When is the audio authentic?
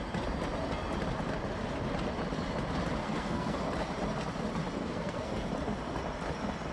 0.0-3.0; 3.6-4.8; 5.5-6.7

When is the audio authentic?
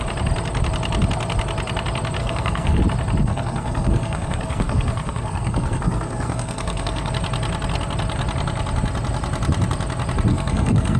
0.0-2.2; 2.8-3.2; 7.1-10.3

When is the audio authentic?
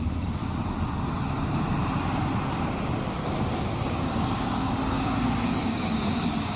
0.4-3.8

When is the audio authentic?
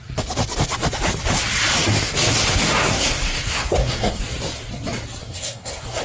0.0-2.9; 4.2-5.2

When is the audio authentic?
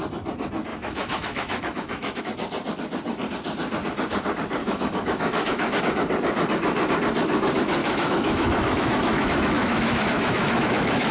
0.0-0.7; 2.2-4.6; 5.8-7.8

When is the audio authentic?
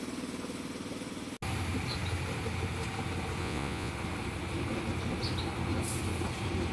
0.0-3.4; 3.9-6.7